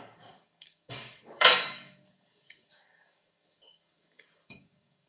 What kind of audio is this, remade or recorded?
remade